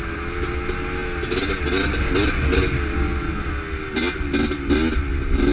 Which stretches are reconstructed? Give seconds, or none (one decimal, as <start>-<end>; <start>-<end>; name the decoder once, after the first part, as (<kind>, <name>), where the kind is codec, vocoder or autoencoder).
none